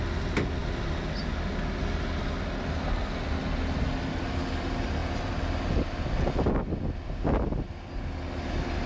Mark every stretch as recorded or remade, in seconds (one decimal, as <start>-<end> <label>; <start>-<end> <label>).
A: 0.0-8.9 recorded

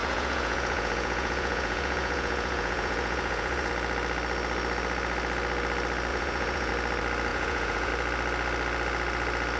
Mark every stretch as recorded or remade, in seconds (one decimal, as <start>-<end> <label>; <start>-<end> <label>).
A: 0.0-3.7 remade; 3.7-6.1 recorded; 6.1-6.7 remade; 6.7-7.3 recorded; 7.3-7.9 remade; 7.9-9.6 recorded

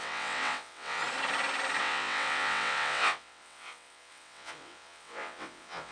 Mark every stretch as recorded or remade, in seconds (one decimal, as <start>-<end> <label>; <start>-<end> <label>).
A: 0.0-1.0 remade; 1.0-1.8 recorded; 1.8-5.9 remade

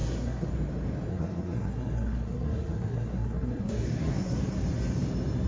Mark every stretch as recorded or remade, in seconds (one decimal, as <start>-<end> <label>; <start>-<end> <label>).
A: 0.0-0.5 remade; 0.5-1.1 recorded; 1.1-4.4 remade; 4.4-5.5 recorded

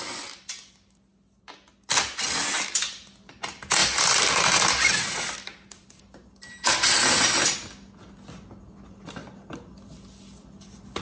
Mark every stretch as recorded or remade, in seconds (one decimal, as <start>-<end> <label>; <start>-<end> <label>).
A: 0.0-11.0 recorded

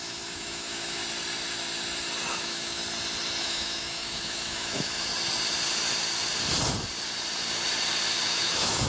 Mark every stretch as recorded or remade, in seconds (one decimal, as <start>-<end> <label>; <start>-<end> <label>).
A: 0.0-1.0 remade; 1.0-2.3 recorded; 2.3-2.8 remade; 2.8-3.4 recorded; 3.4-5.1 remade; 5.1-8.2 recorded; 8.2-8.9 remade

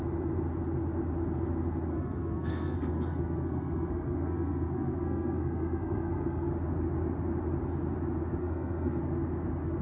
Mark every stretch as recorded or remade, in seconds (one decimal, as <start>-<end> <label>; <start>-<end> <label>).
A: 0.0-1.9 recorded; 1.9-6.5 remade; 6.5-8.4 recorded; 8.4-9.0 remade; 9.0-9.8 recorded

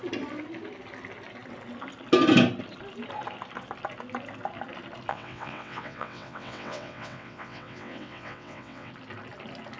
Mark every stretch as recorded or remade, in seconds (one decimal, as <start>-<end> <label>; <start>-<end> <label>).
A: 0.0-5.1 recorded; 5.1-8.9 remade; 8.9-9.8 recorded